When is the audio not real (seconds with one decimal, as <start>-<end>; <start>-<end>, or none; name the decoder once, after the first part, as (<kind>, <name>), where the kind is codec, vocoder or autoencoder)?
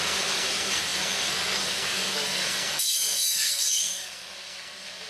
0.0-5.1 (codec, SNAC)